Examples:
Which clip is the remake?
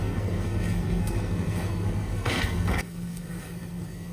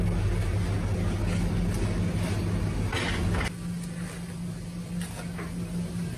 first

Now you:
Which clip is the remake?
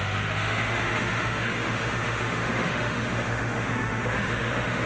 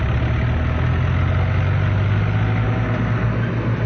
first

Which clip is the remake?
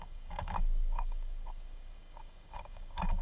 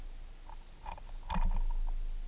first